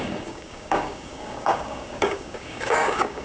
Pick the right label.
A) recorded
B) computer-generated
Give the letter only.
B